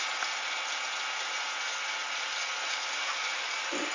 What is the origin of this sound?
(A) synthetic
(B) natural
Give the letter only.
B